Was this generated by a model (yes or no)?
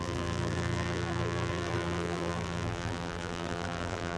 yes